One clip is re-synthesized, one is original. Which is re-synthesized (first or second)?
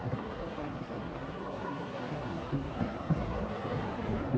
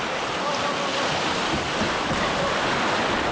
first